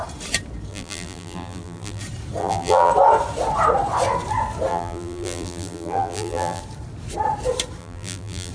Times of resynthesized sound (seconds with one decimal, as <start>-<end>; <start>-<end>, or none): 0.7-2.0; 2.4-2.9; 4.7-6.6; 7.8-8.5